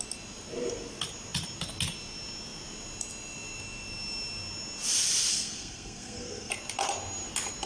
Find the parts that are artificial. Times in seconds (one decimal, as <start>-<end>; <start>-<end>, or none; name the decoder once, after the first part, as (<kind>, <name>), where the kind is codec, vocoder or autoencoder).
5.3-6.5 (codec, SNAC)